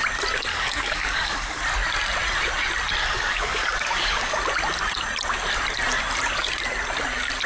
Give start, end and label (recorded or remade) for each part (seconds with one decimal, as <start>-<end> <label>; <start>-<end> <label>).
0.0-0.5 recorded; 0.5-1.6 remade; 1.6-3.0 recorded; 3.0-4.4 remade; 4.4-7.5 recorded